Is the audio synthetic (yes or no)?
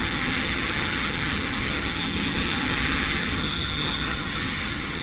yes